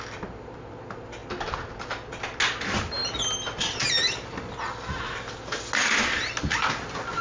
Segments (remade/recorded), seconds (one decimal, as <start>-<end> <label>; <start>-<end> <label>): 0.0-7.2 recorded